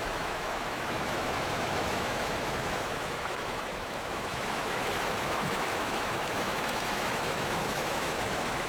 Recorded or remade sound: remade